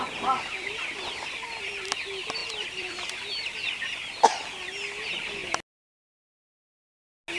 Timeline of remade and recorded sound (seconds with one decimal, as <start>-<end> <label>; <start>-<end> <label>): 0.0-2.4 recorded; 2.4-3.1 remade; 3.1-7.4 recorded